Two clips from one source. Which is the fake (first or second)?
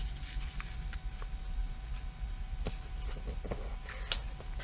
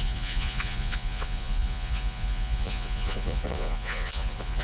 second